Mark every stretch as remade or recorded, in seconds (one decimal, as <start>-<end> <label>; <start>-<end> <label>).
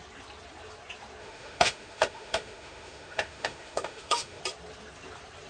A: 0.0-1.2 recorded; 1.2-4.4 remade; 4.4-5.5 recorded